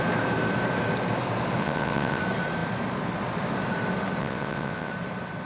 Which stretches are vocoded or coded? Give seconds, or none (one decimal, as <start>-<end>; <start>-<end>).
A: 1.6-2.2; 4.2-4.9